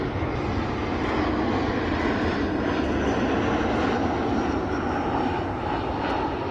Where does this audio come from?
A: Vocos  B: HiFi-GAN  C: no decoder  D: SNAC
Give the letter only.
C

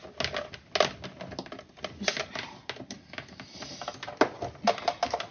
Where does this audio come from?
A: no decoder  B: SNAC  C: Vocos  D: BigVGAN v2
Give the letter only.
A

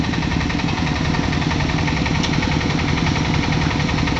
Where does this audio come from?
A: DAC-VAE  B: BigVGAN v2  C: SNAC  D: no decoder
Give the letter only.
D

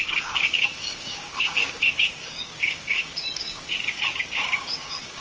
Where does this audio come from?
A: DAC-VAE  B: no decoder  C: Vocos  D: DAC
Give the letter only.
D